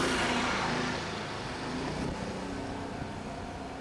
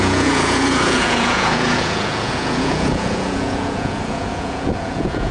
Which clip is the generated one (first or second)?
second